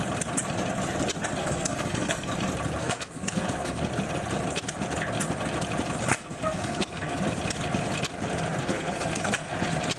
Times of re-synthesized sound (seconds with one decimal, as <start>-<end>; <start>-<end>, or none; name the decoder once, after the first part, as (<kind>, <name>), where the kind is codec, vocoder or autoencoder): 1.4-2.3 (codec, SNAC); 2.8-3.8; 6.1-7.2; 8.7-9.5